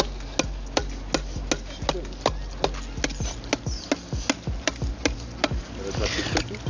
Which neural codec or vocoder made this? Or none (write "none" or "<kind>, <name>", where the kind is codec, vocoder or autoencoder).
none